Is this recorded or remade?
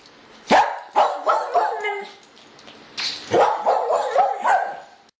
recorded